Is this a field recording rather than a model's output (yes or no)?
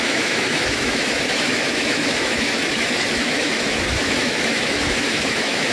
no